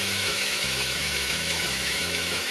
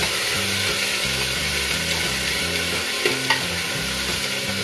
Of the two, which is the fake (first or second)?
first